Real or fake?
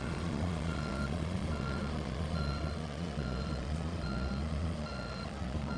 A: fake